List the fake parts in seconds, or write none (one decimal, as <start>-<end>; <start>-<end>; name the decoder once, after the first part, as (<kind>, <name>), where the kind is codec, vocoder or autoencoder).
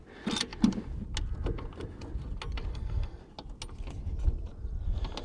2.7-3.2 (codec, SNAC)